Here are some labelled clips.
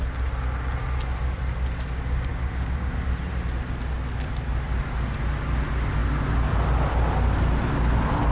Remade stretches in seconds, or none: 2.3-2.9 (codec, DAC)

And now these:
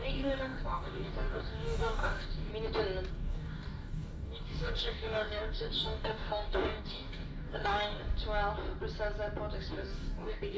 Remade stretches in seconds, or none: 0.0-2.5 (codec, DAC); 3.1-8.0; 9.7-10.6

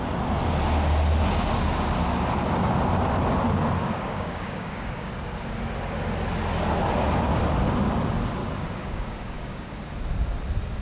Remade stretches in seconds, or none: 3.8-5.1 (codec, DAC); 8.4-9.7

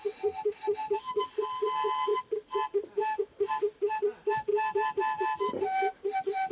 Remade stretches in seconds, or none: none

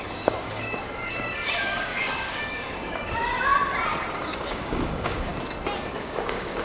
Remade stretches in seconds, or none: 0.0-3.5 (codec, DAC); 4.1-5.3; 5.9-6.6

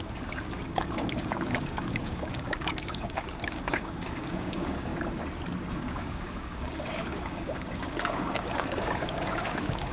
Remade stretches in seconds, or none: 0.0-4.9 (codec, DAC); 5.7-9.9

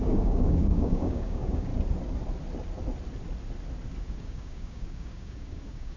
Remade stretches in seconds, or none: 0.0-1.7 (codec, DAC); 4.0-6.0